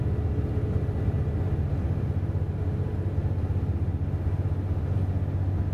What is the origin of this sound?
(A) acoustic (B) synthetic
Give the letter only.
A